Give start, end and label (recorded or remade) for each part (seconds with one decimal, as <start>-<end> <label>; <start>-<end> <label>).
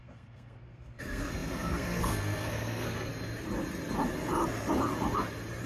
0.0-3.1 remade; 3.1-5.7 recorded